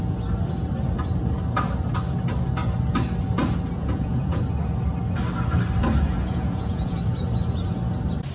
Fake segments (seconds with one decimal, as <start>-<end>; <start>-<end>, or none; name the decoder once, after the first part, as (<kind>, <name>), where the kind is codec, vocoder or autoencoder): 3.8-4.4 (vocoder, Vocos); 6.1-7.0

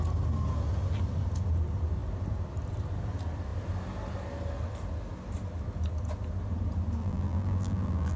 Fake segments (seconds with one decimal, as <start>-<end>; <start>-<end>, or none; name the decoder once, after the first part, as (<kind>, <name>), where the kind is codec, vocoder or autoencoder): 7.0-8.2 (vocoder, BigVGAN v2)

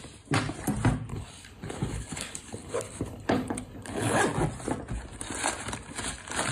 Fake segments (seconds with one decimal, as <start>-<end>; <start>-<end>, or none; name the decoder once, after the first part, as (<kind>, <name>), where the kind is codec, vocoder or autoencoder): 1.1-4.2 (codec, HILCodec)

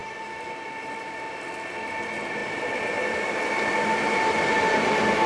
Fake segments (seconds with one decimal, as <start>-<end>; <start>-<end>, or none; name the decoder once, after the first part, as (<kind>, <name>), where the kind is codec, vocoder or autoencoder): none

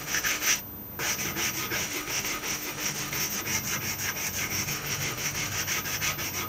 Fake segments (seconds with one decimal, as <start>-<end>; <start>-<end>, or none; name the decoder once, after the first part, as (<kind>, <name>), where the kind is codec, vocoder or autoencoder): 0.0-0.6 (autoencoder, DAC-VAE); 1.8-3.4; 4.4-5.6